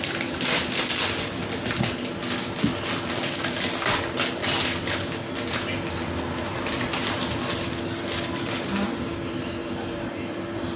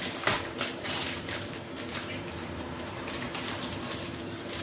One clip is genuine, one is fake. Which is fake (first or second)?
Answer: second